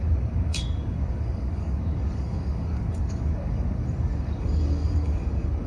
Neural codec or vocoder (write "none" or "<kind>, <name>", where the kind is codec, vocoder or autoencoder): codec, DAC